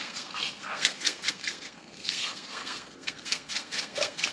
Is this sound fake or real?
fake